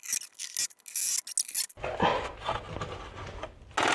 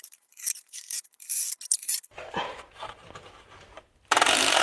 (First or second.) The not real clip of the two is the second